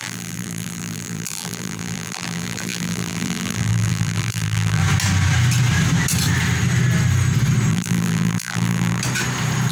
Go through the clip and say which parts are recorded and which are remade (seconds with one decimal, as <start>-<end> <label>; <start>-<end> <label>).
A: 0.0-4.8 remade; 4.8-7.7 recorded; 7.7-9.0 remade; 9.0-9.7 recorded